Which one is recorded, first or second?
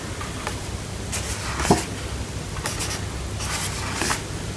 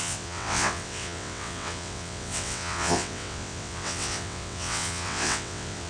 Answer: first